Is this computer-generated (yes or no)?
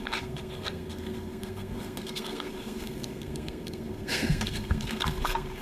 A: yes